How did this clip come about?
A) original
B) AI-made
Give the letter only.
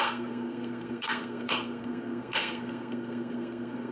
B